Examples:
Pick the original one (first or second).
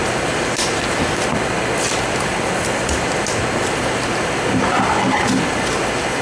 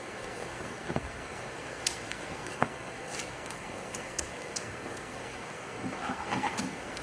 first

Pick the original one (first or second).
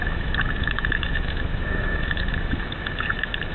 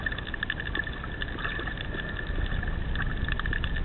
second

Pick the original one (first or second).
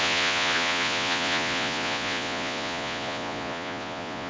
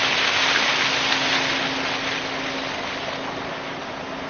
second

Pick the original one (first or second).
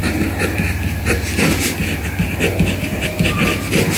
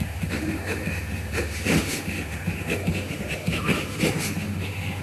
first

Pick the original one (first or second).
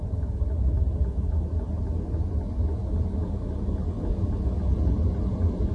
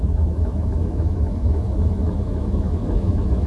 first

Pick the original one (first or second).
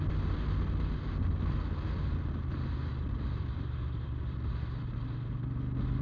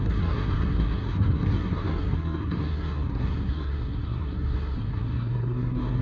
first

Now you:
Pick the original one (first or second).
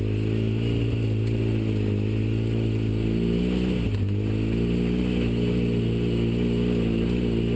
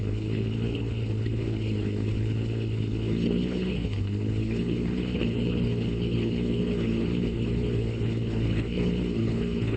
first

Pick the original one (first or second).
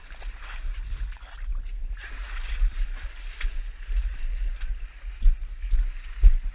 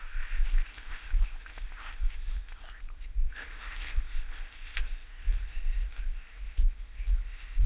first